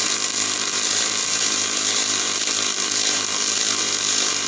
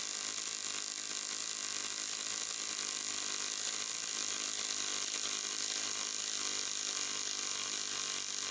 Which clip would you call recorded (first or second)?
second